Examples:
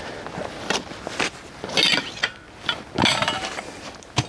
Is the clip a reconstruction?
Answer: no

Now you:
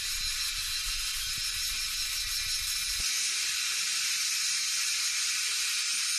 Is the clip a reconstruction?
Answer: no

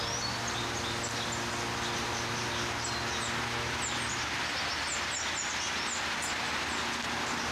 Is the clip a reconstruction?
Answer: no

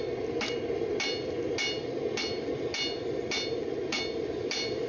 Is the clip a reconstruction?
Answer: no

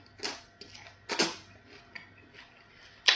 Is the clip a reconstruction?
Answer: no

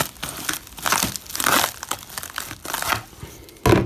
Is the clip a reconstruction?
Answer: no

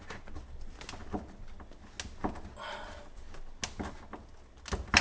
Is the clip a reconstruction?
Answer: no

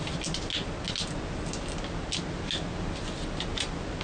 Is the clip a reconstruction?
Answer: no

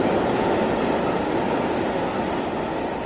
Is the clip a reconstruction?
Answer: no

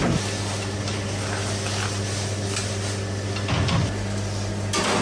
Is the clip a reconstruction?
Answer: no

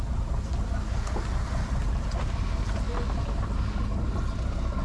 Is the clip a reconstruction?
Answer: no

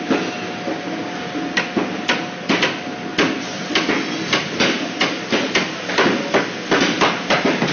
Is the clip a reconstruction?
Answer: no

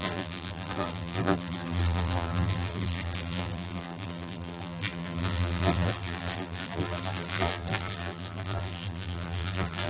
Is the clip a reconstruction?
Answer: yes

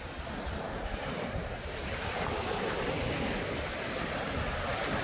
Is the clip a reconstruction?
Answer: no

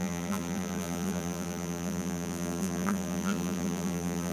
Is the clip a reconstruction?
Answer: yes